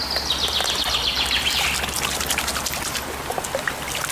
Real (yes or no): yes